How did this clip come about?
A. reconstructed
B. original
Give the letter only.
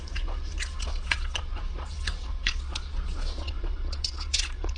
A